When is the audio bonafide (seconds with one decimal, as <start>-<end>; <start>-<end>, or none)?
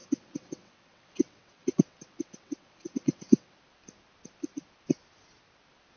3.6-6.0